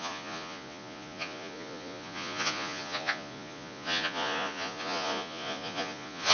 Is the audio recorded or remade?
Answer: remade